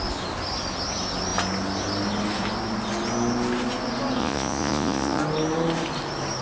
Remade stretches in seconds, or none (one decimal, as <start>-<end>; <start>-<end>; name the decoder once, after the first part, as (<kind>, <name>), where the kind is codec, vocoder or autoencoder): 4.2-5.2 (vocoder, Vocos)